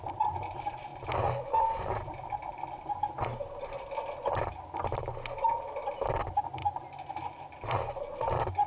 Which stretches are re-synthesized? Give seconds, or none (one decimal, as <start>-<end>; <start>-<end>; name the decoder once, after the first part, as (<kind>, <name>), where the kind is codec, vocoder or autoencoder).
none